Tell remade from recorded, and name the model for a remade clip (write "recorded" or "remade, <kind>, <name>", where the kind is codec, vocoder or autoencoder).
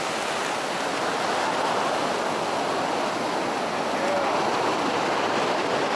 recorded